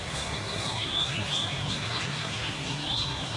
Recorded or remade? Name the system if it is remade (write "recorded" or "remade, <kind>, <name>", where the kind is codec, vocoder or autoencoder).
remade, codec, SNAC